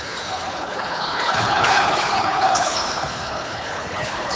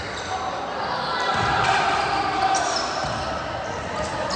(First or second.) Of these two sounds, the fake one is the first